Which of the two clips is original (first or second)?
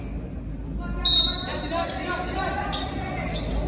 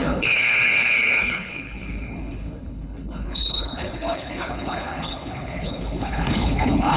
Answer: first